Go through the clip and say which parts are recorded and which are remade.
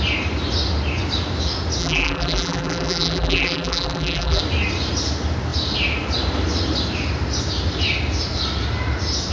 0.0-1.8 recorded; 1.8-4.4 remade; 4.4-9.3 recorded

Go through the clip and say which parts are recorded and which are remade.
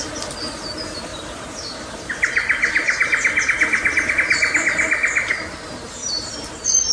0.0-1.1 recorded; 1.1-4.1 remade; 4.1-6.0 recorded; 6.0-6.5 remade; 6.5-6.9 recorded